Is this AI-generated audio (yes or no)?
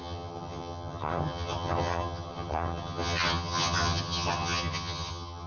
yes